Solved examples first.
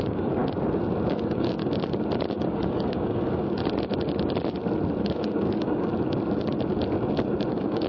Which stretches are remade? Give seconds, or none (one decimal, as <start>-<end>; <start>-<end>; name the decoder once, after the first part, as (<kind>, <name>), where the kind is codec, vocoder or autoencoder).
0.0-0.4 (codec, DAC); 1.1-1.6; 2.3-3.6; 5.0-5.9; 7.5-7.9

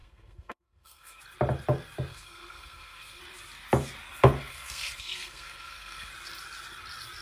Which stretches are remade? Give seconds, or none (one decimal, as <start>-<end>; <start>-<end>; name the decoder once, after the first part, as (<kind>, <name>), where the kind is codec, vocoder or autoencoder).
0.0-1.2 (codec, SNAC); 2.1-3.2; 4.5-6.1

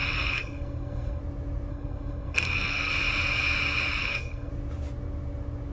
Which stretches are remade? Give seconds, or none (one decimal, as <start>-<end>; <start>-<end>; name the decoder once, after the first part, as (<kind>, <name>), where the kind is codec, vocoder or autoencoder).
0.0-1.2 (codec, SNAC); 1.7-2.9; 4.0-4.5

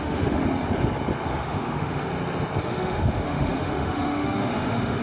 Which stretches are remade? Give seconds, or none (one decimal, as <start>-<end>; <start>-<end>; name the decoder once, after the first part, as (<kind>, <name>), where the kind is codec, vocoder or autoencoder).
0.0-0.4 (autoencoder, DAC-VAE); 1.3-2.1; 2.6-5.0

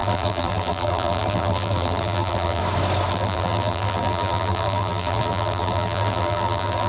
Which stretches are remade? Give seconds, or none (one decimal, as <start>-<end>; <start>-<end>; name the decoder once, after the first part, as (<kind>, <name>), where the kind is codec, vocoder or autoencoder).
0.0-2.6 (vocoder, BigVGAN v2); 3.1-6.9

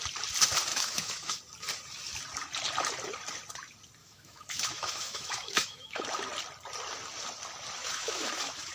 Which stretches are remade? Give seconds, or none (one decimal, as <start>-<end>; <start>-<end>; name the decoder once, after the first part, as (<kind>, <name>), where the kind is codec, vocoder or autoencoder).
0.7-1.4 (autoencoder, DAC-VAE); 4.0-6.0; 7.8-8.7